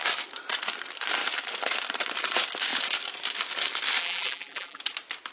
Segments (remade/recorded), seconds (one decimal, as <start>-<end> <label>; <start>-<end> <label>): 0.0-4.0 recorded; 4.0-4.8 remade; 4.8-5.3 recorded